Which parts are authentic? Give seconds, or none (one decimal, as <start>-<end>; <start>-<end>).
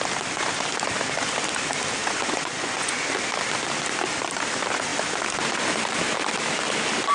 0.0-2.0; 3.1-7.1